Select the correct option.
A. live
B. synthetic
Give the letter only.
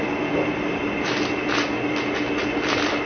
A